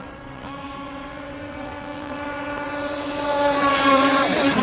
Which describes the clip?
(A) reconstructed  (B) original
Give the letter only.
A